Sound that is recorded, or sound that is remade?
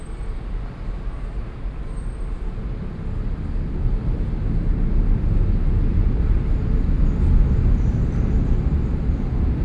recorded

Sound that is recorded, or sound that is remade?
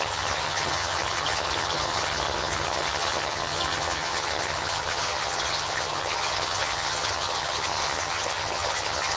remade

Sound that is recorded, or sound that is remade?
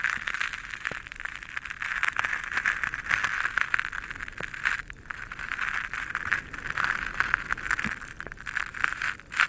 recorded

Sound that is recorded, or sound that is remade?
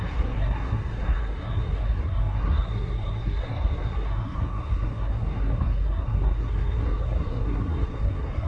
remade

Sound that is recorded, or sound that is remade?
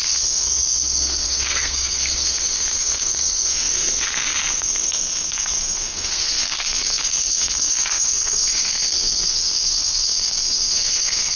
remade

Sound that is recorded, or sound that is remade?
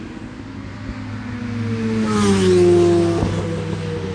recorded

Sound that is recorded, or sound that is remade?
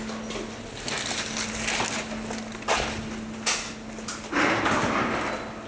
recorded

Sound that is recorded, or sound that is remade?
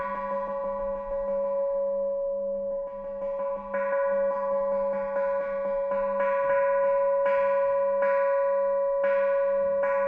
recorded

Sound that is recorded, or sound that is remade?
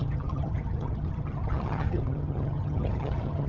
remade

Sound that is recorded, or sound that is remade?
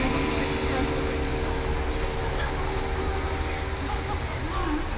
recorded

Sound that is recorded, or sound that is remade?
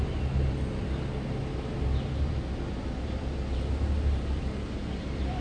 recorded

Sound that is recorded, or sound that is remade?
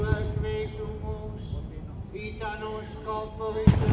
recorded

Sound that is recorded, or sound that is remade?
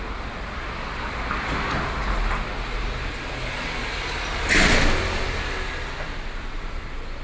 recorded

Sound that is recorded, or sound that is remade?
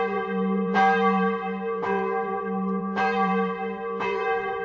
remade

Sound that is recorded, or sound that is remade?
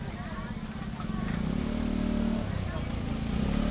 recorded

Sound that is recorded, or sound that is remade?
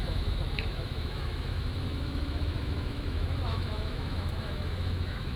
remade